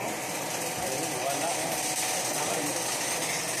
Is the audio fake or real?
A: real